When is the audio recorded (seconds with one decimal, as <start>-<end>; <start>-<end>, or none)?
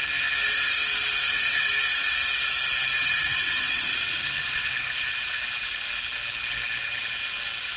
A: 0.0-3.0; 4.7-7.8